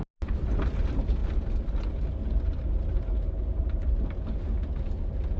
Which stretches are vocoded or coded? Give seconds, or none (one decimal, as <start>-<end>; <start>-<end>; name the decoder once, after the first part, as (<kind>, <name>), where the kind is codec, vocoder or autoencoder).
none